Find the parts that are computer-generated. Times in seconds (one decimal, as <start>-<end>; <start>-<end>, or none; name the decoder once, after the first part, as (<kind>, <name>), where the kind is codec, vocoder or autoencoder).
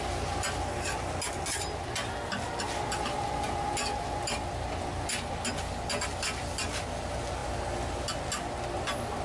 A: none